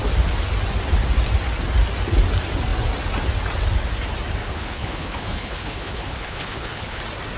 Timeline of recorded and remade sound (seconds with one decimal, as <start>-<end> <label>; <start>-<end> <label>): 0.0-4.4 recorded; 4.4-7.0 remade; 7.0-7.4 recorded